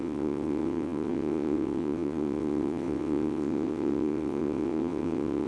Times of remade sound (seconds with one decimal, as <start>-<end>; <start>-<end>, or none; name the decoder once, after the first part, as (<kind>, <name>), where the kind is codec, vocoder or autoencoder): 0.0-5.5 (vocoder, WaveNeXt)